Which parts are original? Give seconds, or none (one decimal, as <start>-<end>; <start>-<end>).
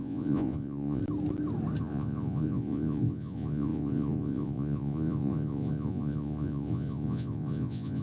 1.0-1.8